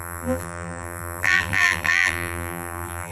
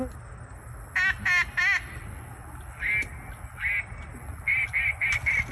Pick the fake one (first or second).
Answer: first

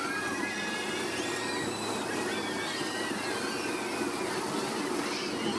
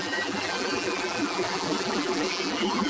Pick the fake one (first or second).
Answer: second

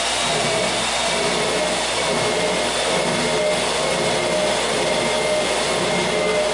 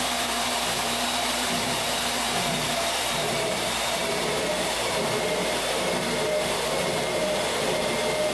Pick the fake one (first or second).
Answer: second